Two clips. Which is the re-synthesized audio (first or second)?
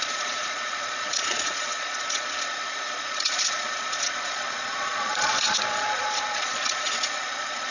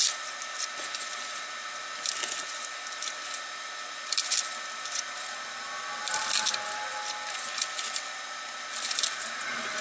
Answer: first